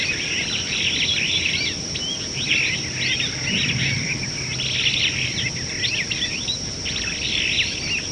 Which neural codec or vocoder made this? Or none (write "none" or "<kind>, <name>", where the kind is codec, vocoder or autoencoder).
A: none